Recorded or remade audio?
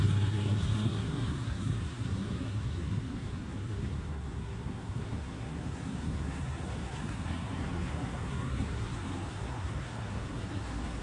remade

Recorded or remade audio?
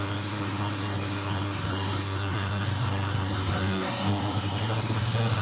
remade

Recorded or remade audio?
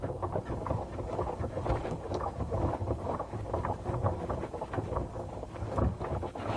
remade